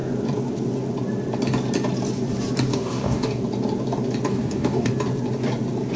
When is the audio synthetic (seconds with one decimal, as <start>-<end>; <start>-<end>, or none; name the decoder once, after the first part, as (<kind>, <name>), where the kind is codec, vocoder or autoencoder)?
2.7-3.4 (codec, DAC); 4.3-4.9